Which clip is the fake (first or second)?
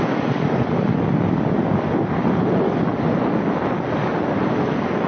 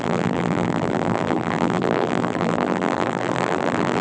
second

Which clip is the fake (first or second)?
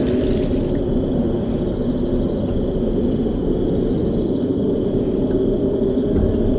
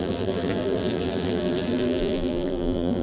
second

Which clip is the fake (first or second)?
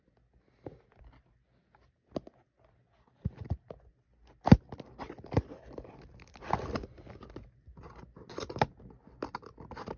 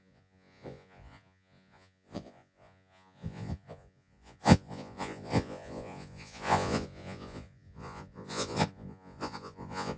second